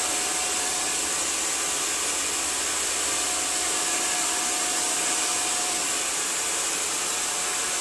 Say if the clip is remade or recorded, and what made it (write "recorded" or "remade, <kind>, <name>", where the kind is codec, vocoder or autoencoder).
recorded